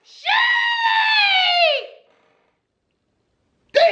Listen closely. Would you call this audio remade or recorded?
recorded